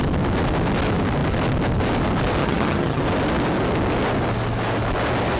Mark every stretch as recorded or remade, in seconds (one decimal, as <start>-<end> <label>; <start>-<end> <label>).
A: 0.0-2.4 recorded; 2.4-3.0 remade; 3.0-5.4 recorded

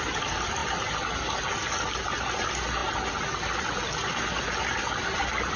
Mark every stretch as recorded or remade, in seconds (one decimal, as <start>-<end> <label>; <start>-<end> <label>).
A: 0.0-5.6 recorded

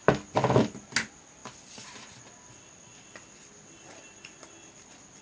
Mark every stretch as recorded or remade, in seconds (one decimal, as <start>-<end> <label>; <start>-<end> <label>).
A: 0.0-5.2 recorded

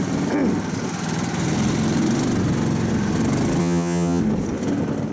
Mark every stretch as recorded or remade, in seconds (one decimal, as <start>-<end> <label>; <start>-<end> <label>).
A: 0.0-3.6 recorded; 3.6-4.2 remade; 4.2-5.1 recorded

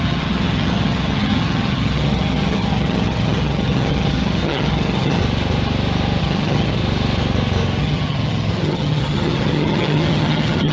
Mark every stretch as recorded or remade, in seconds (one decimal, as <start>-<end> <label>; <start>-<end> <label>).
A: 0.0-5.2 remade; 5.2-6.2 recorded; 6.2-6.8 remade; 6.8-7.8 recorded; 7.8-10.7 remade

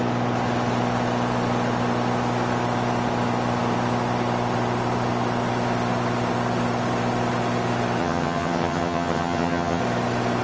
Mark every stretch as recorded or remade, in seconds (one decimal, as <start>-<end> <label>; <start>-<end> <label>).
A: 0.0-8.0 recorded; 8.0-9.8 remade; 9.8-10.4 recorded